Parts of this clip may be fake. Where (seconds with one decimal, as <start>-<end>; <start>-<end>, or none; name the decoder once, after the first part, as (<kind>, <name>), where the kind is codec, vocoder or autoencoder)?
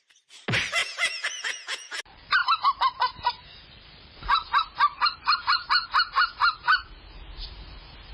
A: 0.8-2.0 (vocoder, Vocos)